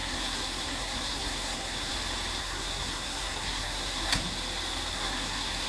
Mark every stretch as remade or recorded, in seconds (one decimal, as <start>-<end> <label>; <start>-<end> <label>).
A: 0.0-1.9 remade; 1.9-2.4 recorded; 2.4-4.2 remade; 4.2-4.9 recorded; 4.9-5.7 remade